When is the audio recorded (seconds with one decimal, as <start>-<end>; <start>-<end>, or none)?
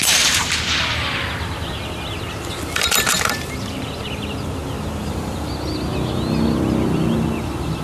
0.8-3.1; 3.8-5.0; 5.5-7.8